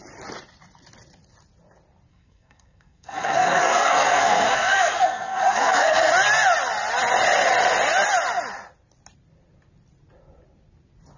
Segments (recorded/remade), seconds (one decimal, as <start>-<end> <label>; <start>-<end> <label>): 0.0-2.1 recorded; 2.1-6.1 remade; 6.1-11.2 recorded